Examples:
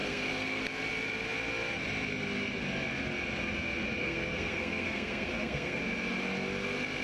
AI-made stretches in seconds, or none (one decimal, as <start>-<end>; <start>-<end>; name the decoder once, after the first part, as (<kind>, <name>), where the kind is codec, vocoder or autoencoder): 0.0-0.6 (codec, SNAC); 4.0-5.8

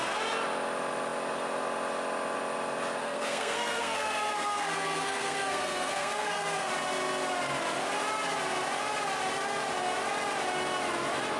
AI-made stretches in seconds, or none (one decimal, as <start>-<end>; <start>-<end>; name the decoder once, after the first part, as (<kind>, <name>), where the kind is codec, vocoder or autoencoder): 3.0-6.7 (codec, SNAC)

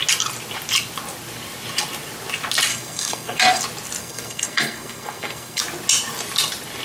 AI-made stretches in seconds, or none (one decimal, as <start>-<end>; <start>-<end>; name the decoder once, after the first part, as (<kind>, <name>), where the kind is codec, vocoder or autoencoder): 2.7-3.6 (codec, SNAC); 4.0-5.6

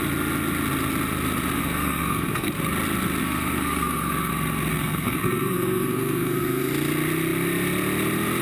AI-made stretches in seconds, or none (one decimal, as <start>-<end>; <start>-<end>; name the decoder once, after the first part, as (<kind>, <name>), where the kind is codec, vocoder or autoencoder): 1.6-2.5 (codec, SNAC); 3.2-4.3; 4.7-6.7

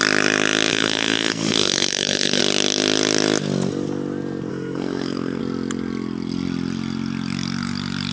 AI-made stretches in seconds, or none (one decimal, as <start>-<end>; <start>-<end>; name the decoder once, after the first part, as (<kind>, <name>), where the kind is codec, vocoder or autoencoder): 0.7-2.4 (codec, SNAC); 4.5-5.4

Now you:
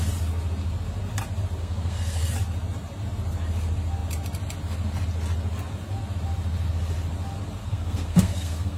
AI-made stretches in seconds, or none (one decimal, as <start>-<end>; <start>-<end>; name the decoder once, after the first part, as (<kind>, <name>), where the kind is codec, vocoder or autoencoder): 1.6-2.3 (codec, SNAC); 7.6-8.8